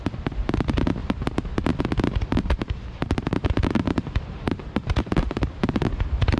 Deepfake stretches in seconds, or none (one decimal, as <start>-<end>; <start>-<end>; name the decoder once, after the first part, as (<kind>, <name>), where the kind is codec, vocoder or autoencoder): 2.3-6.4 (vocoder, BigVGAN v2)